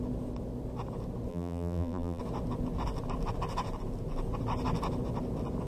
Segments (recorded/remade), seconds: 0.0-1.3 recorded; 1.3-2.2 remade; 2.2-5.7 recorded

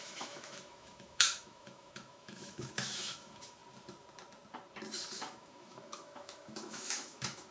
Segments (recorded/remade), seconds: 0.0-3.6 remade; 3.6-5.1 recorded; 5.1-7.5 remade

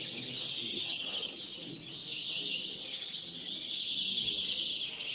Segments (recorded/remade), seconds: 0.0-0.7 recorded; 0.7-1.4 remade; 1.4-5.1 recorded

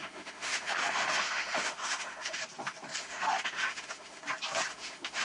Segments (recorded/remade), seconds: 0.0-2.4 remade; 2.4-3.0 recorded; 3.0-4.2 remade; 4.2-4.7 recorded; 4.7-5.2 remade

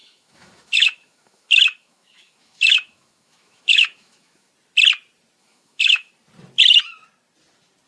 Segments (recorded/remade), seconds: 0.0-4.5 remade; 4.5-5.4 recorded; 5.4-6.1 remade; 6.1-7.9 recorded

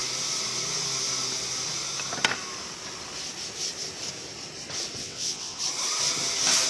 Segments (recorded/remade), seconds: 0.0-5.0 recorded; 5.0-5.6 remade; 5.6-6.7 recorded